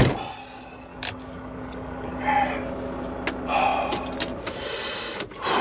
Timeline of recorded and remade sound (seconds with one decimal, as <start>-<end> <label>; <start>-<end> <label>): 0.0-0.9 recorded; 0.9-2.1 remade; 2.1-5.6 recorded